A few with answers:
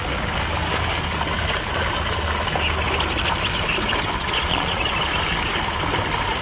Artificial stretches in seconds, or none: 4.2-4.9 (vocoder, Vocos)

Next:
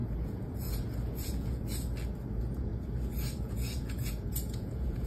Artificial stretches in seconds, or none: 0.0-1.6 (vocoder, Vocos); 2.3-2.7; 3.4-5.1

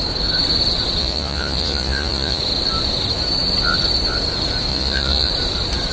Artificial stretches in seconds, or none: 1.0-2.4 (vocoder, Vocos); 4.7-5.3

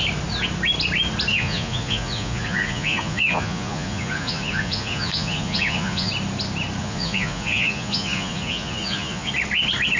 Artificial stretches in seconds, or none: 1.3-6.1 (vocoder, Vocos); 6.8-9.3

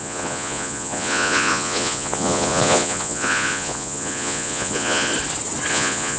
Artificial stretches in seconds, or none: 0.0-5.1 (vocoder, Vocos); 5.7-6.2